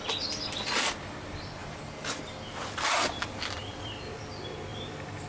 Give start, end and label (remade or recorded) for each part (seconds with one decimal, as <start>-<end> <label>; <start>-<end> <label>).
0.0-3.6 recorded; 3.6-4.3 remade; 4.3-4.7 recorded; 4.7-5.3 remade

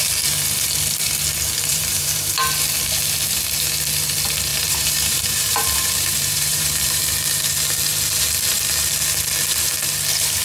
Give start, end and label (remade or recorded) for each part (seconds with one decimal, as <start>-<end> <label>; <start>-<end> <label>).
0.0-1.7 recorded; 1.7-2.3 remade; 2.3-4.5 recorded; 4.5-7.0 remade; 7.0-10.4 recorded